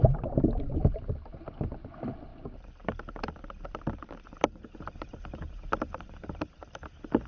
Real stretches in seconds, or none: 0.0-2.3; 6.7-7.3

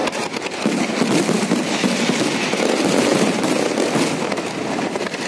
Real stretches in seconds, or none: 0.0-5.3

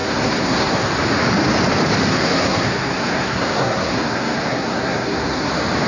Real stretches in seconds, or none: 0.9-2.1; 5.5-5.9

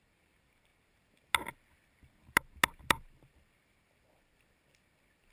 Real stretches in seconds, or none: 0.0-5.3

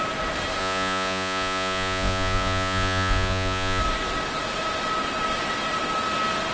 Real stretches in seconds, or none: 0.0-0.6; 3.8-6.5

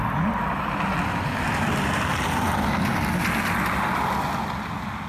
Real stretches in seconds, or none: 0.0-5.1

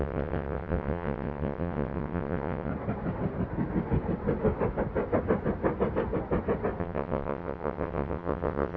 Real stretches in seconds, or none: 2.7-6.8

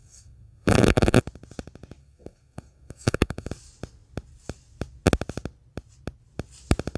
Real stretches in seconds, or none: 1.2-2.0; 3.5-7.0